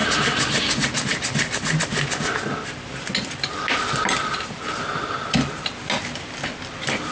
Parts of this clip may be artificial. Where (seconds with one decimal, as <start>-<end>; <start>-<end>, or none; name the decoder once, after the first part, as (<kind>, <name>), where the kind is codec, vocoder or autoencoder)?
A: none

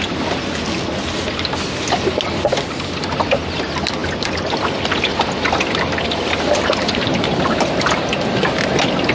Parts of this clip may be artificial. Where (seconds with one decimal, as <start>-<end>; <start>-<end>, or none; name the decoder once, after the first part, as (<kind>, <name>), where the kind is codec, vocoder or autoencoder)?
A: none

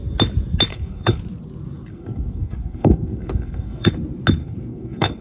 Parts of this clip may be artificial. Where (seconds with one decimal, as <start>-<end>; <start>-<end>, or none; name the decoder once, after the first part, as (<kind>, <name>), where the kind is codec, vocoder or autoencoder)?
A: 0.7-1.2 (codec, SNAC); 1.9-3.9; 4.4-5.2

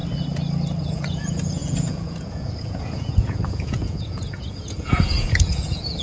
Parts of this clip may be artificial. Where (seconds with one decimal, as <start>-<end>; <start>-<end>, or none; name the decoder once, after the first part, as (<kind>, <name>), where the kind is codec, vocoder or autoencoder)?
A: 0.8-6.0 (vocoder, Vocos)

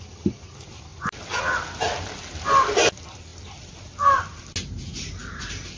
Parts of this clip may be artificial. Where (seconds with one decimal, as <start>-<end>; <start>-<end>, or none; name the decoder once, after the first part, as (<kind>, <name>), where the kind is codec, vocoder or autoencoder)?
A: none

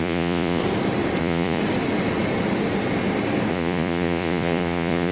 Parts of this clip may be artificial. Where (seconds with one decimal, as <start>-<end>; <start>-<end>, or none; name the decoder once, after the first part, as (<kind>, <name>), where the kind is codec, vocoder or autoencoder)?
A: 0.0-0.6 (vocoder, Vocos); 1.2-1.6; 3.5-5.1

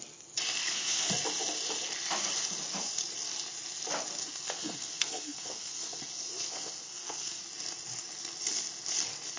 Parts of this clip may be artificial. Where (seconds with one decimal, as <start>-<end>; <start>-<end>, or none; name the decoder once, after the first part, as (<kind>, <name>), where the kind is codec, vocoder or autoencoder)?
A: 0.6-1.1 (codec, SNAC); 4.2-7.4